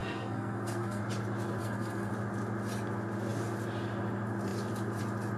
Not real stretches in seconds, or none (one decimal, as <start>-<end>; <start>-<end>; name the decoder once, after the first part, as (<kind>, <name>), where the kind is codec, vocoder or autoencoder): 0.0-1.0 (codec, SNAC); 1.6-2.1